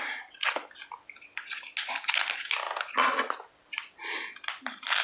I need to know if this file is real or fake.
real